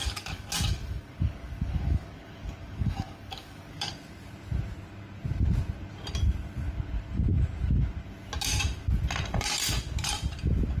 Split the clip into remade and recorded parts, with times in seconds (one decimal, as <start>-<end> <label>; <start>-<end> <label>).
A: 0.0-3.9 remade; 3.9-10.8 recorded